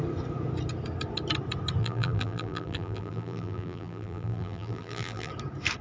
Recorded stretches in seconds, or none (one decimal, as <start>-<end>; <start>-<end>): 0.0-1.8; 5.3-5.8